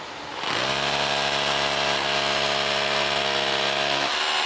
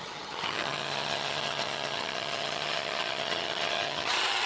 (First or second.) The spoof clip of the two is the second